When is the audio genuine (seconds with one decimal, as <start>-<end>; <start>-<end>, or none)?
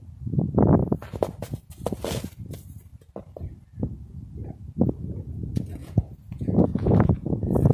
0.0-5.8; 7.3-7.7